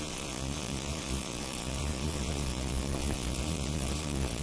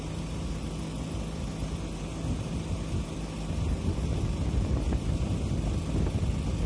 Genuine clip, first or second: second